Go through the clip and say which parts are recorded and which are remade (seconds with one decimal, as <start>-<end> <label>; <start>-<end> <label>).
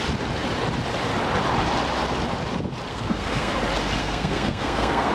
0.0-2.9 recorded; 2.9-3.5 remade; 3.5-4.0 recorded; 4.0-5.1 remade